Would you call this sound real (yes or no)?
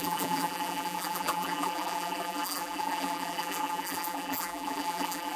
no